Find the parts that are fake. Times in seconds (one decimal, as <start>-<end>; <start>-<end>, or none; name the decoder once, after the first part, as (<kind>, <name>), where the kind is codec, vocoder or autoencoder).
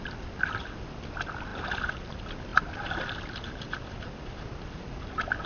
none